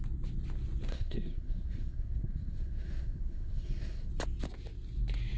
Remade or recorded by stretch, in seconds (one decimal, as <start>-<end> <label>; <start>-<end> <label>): 0.0-0.9 recorded; 0.9-4.1 remade; 4.1-5.4 recorded

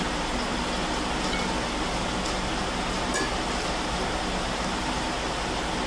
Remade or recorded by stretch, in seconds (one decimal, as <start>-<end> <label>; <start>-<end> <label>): 0.0-5.9 recorded

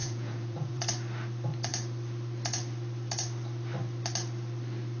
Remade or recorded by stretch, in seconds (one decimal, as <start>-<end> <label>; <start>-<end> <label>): 0.0-0.8 remade; 0.8-5.0 recorded

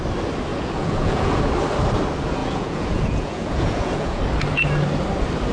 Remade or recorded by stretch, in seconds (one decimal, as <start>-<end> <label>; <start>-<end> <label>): 0.0-0.5 recorded; 0.5-1.4 remade; 1.4-2.4 recorded; 2.4-4.2 remade; 4.2-5.5 recorded

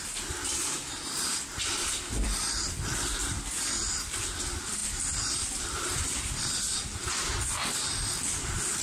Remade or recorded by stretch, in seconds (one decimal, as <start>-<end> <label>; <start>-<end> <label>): 0.0-8.8 recorded

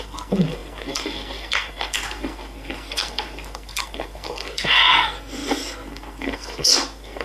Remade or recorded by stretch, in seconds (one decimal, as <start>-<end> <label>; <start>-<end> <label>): 0.0-7.2 remade

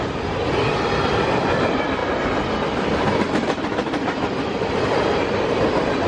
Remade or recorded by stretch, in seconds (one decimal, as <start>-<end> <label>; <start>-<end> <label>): 0.0-6.1 remade

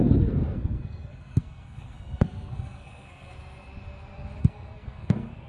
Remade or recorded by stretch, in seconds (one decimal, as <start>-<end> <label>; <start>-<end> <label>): 0.0-3.3 remade; 3.3-4.4 recorded; 4.4-5.5 remade